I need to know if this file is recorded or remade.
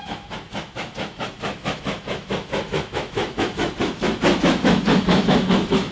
remade